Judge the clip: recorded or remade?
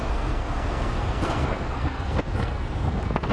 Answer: remade